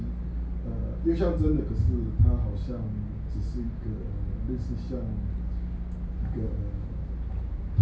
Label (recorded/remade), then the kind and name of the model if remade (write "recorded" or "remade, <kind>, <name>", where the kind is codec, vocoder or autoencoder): recorded